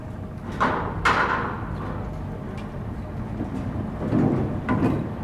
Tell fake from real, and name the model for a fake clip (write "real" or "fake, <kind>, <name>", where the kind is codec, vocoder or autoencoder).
real